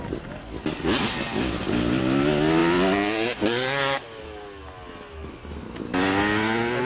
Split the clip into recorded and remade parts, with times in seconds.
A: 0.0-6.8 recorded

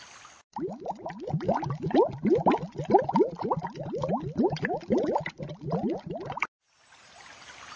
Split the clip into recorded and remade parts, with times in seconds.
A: 0.0-7.8 recorded

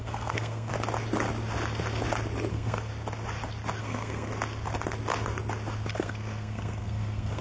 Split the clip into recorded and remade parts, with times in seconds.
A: 0.0-0.7 remade; 0.7-2.5 recorded; 2.5-2.9 remade; 2.9-3.8 recorded; 3.8-4.3 remade; 4.3-5.9 recorded; 5.9-7.4 remade

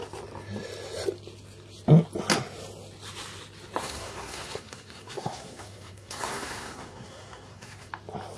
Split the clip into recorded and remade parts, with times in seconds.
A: 0.0-3.8 recorded; 3.8-7.9 remade; 7.9-8.4 recorded

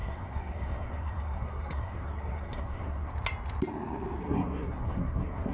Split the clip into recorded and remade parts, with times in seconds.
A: 0.0-3.1 remade; 3.1-4.2 recorded; 4.2-5.5 remade